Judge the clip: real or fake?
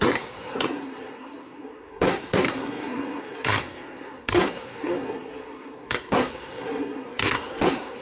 fake